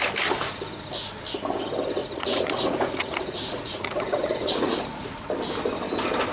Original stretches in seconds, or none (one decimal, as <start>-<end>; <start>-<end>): 0.0-2.0; 5.3-6.3